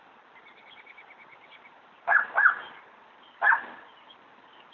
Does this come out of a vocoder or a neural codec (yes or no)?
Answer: no